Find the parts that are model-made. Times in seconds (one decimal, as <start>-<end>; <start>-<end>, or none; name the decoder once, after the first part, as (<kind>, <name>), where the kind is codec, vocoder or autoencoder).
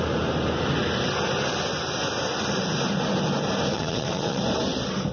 3.7-4.4 (vocoder, WaveNeXt)